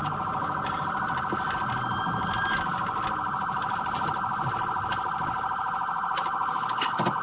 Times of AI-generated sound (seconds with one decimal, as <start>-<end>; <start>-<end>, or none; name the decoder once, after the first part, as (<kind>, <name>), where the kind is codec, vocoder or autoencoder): none

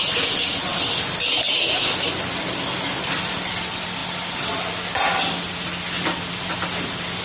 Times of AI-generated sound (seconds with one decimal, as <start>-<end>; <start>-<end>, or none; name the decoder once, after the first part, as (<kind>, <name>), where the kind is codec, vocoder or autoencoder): none